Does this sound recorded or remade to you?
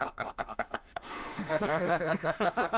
remade